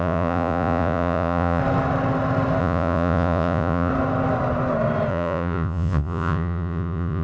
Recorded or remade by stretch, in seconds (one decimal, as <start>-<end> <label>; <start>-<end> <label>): 0.0-1.6 remade; 1.6-2.6 recorded; 2.6-3.9 remade; 3.9-5.1 recorded; 5.1-7.2 remade